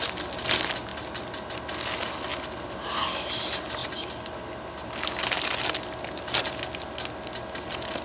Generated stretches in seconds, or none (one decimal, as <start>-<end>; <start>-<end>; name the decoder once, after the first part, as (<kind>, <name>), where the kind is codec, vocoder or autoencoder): 0.9-1.5 (vocoder, BigVGAN v2); 3.8-6.5